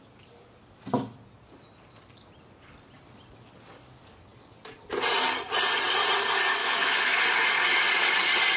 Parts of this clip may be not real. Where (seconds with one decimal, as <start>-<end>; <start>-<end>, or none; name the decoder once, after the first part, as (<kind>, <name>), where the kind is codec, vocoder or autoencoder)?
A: 6.6-7.2 (autoencoder, DAC-VAE)